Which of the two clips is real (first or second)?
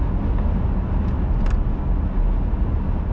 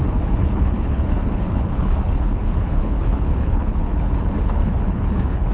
first